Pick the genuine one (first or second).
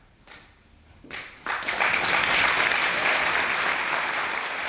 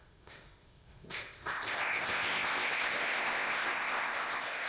first